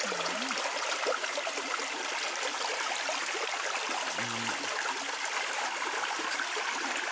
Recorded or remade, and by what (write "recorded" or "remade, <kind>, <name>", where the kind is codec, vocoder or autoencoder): recorded